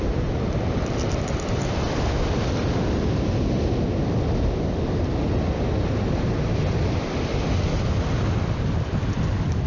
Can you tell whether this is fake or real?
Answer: real